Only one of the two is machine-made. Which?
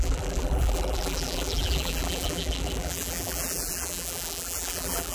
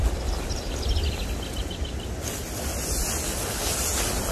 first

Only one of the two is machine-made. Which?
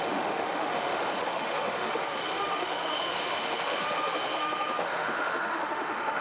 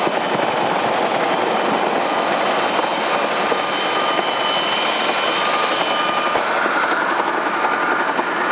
first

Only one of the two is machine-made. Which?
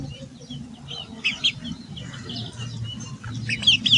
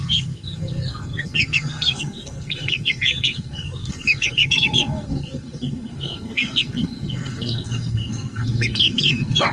second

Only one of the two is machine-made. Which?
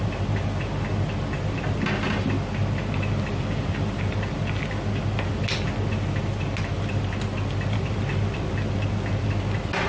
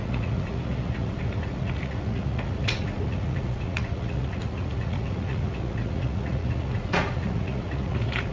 second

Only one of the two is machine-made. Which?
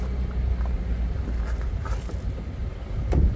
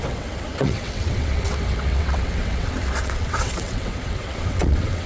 second